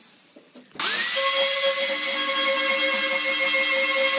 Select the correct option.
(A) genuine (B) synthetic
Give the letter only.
A